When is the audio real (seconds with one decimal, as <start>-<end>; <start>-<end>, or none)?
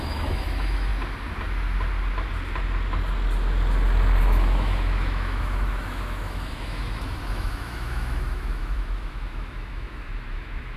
0.9-4.2